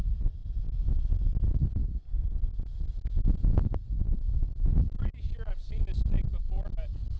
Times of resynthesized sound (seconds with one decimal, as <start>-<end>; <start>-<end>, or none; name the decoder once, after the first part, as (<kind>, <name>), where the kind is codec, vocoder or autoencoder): none